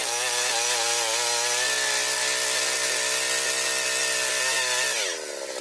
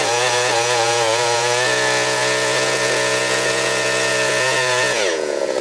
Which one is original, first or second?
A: first